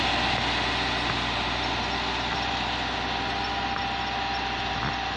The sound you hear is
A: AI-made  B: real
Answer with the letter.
B